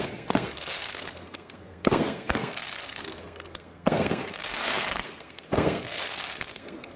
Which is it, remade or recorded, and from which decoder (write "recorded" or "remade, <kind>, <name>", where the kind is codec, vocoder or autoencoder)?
remade, codec, SNAC